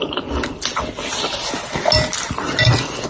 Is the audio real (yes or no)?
yes